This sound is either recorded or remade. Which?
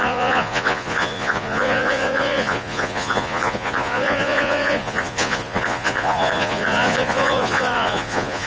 remade